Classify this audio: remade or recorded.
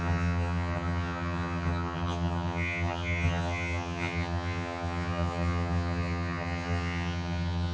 remade